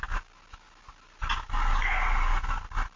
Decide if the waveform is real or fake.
real